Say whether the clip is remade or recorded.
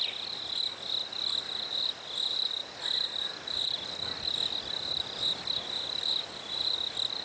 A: recorded